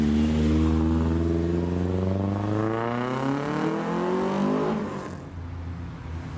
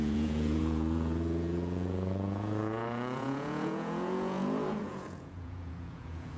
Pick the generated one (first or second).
second